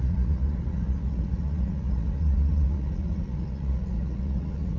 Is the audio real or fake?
fake